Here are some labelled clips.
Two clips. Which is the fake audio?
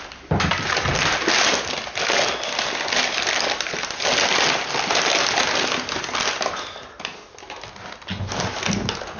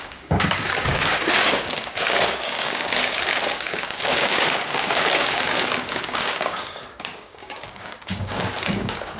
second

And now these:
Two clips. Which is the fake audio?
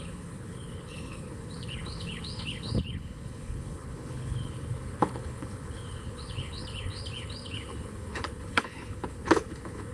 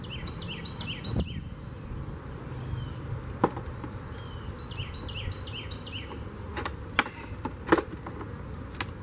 first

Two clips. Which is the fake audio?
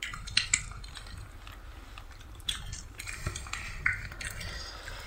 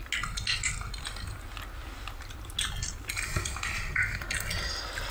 first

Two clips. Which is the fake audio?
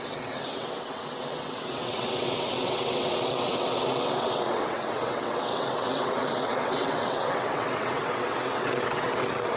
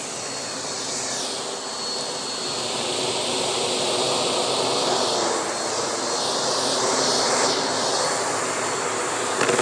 first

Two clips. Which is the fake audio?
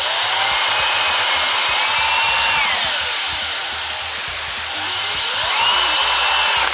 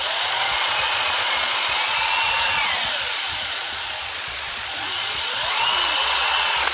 second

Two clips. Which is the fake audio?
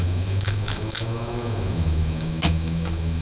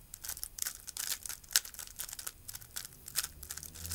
first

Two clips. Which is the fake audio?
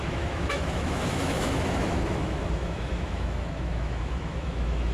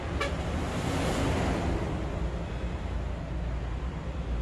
first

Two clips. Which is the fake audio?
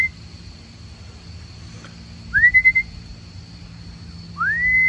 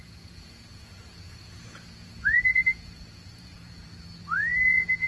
second